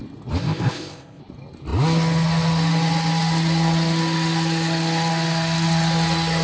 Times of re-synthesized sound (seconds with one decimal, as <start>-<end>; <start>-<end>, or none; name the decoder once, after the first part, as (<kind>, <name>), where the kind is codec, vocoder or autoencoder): 0.4-1.2 (codec, ZipCodec)